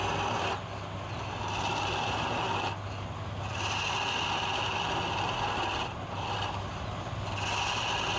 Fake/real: real